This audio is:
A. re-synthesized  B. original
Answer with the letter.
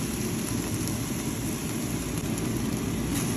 B